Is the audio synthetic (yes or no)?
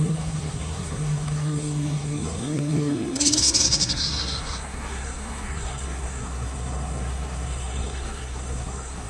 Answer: yes